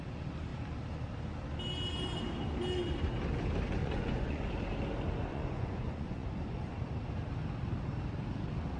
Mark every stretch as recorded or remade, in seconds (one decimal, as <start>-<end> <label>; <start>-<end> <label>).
0.0-3.8 recorded; 3.8-4.5 remade; 4.5-5.3 recorded; 5.3-6.3 remade; 6.3-8.8 recorded